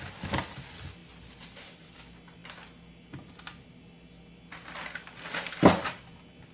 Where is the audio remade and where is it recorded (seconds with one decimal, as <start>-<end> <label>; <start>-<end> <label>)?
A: 0.0-1.0 recorded; 1.0-2.0 remade; 2.0-6.5 recorded